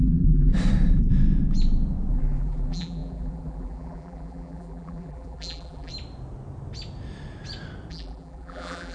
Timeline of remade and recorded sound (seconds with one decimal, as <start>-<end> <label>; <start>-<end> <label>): 0.0-0.5 remade; 0.5-2.1 recorded; 2.1-5.9 remade; 5.9-7.9 recorded; 7.9-8.9 remade

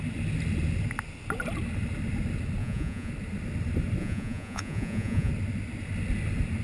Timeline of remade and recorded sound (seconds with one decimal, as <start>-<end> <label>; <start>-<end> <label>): 0.0-2.6 recorded; 2.6-3.1 remade; 3.1-4.0 recorded; 4.0-5.3 remade; 5.3-6.6 recorded

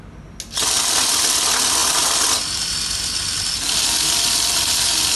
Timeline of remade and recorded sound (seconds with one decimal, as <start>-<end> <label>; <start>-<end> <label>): 0.0-5.2 recorded

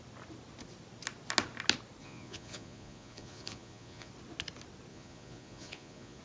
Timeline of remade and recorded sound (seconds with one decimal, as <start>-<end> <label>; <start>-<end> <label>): 0.0-2.0 recorded; 2.0-4.1 remade; 4.1-4.9 recorded; 4.9-6.2 remade